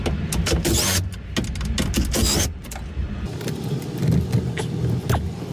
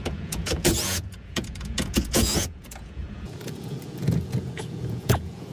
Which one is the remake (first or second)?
second